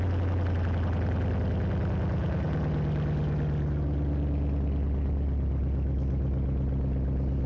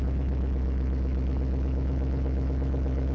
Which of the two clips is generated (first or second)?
second